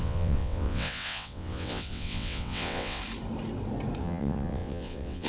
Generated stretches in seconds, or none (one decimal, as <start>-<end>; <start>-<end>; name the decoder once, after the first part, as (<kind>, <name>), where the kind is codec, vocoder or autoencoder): 0.0-3.0 (vocoder, WaveNeXt); 4.0-5.3